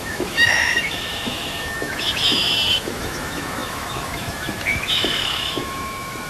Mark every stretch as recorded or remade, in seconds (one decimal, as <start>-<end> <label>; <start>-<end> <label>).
0.0-6.3 remade